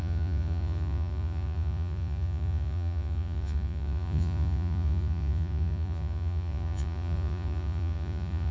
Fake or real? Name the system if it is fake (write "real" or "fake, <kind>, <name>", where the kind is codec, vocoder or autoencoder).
fake, vocoder, Vocos